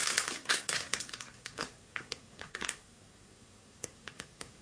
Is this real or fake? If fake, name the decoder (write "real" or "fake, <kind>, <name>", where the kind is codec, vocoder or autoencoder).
fake, codec, SNAC